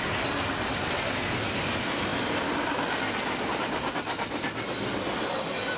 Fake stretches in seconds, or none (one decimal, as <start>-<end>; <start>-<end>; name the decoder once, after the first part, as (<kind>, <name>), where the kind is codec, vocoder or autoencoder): none